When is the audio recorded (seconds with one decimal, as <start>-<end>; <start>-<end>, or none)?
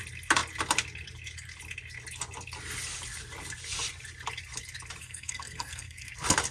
0.0-5.0; 6.1-6.5